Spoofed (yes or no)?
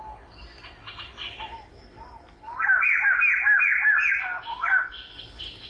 no